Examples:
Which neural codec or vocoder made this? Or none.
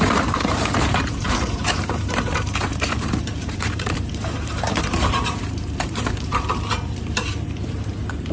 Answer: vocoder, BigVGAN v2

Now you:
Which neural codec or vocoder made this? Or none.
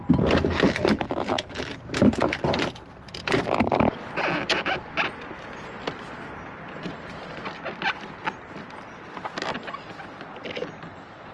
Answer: none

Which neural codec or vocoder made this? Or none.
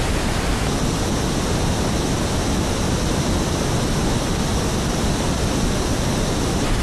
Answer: vocoder, BigVGAN v2